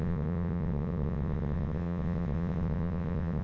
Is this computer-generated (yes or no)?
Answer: yes